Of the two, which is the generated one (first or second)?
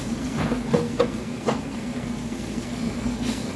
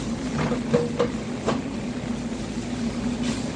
first